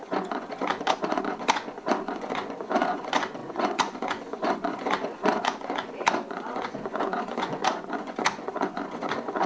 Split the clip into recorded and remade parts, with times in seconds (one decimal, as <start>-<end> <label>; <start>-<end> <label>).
0.0-9.5 remade